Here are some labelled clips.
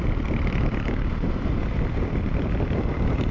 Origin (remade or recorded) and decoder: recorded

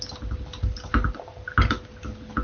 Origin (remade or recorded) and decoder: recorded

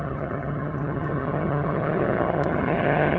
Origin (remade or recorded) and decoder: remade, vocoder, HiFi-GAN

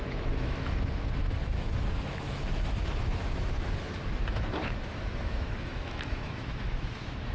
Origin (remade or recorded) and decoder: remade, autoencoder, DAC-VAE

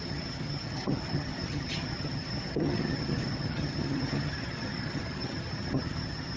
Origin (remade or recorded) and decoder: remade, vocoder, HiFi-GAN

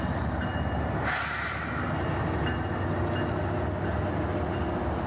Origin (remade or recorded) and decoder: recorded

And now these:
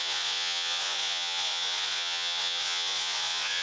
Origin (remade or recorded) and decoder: remade, vocoder, Vocos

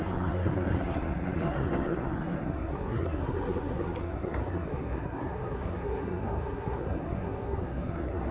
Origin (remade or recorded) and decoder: remade, codec, SNAC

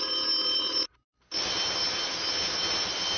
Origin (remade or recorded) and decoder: recorded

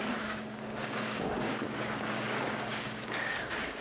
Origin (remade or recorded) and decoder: remade, codec, DAC